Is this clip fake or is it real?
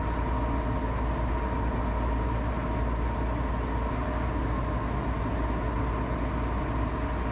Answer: real